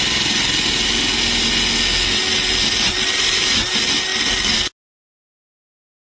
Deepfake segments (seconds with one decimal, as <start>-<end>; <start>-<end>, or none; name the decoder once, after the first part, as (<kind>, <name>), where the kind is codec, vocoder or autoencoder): none